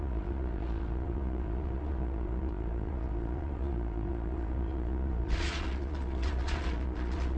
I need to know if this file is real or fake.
fake